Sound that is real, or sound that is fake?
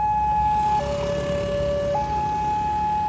real